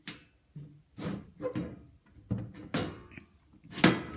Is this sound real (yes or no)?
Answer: yes